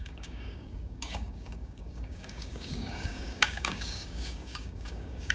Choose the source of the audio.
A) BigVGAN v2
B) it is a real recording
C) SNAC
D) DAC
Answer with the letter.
D